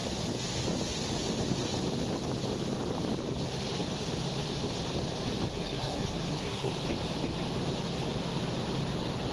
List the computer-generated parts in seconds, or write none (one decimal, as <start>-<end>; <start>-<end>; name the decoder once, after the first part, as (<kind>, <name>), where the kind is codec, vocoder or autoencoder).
5.5-6.7 (codec, SNAC)